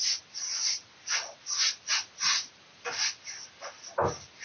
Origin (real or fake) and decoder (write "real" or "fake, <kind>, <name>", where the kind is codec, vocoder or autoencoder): fake, vocoder, BigVGAN v2